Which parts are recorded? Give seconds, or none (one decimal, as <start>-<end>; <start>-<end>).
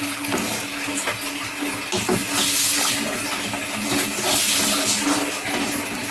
0.0-6.1